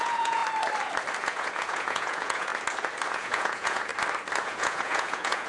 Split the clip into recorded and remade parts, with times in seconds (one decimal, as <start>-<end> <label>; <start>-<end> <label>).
0.0-0.4 remade; 0.4-1.2 recorded; 1.2-2.5 remade; 2.5-3.1 recorded; 3.1-3.9 remade; 3.9-4.4 recorded; 4.4-5.5 remade